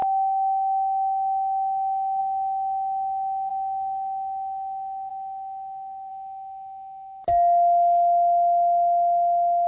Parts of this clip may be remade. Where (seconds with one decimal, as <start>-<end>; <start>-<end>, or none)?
0.0-2.2; 6.1-7.3